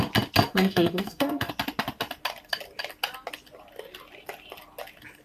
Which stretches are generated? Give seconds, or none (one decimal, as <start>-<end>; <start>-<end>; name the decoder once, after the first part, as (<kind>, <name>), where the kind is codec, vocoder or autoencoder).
0.5-1.5 (codec, SNAC)